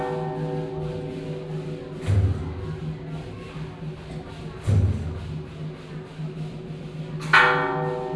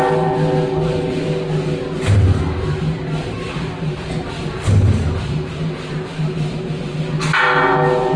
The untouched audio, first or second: first